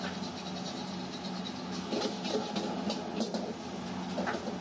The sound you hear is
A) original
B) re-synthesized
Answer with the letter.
A